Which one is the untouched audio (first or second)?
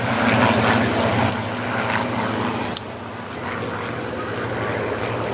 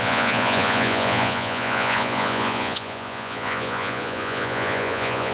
first